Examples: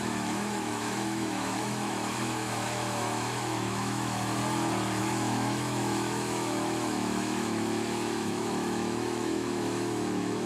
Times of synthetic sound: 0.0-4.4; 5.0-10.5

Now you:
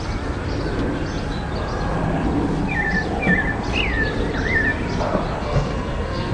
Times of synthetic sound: 5.4-6.3

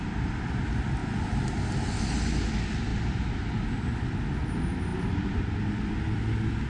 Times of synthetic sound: 2.9-3.9; 4.9-5.4

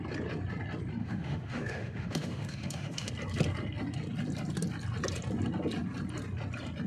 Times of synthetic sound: 1.0-3.1